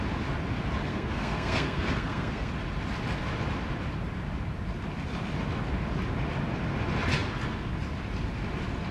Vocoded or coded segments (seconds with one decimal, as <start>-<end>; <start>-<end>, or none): 0.9-2.5